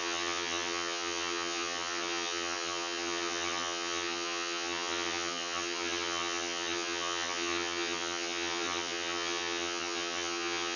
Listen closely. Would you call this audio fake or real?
fake